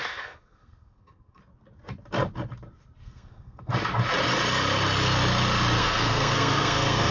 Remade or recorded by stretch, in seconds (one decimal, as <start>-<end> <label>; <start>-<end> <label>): 0.0-1.4 remade; 1.4-3.0 recorded; 3.0-3.7 remade; 3.7-5.8 recorded; 5.8-7.1 remade